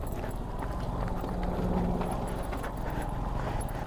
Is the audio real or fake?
real